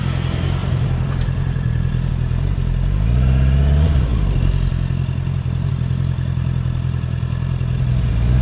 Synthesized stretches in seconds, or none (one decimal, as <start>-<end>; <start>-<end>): 0.6-2.1